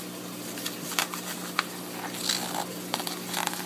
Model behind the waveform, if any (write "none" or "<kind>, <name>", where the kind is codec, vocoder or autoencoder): none